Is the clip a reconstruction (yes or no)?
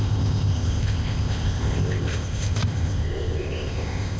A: yes